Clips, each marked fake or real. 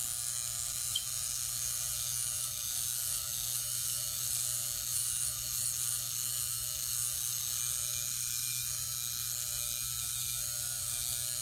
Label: fake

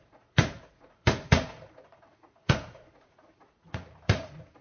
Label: fake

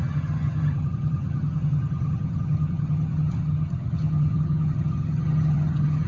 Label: fake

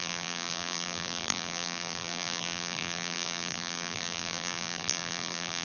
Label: fake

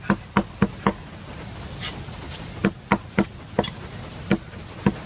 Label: real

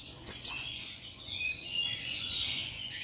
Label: fake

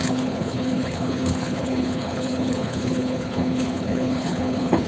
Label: fake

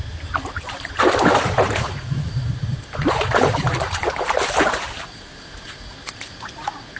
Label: real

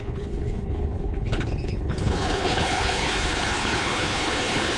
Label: fake